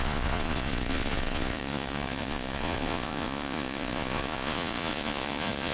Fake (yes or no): yes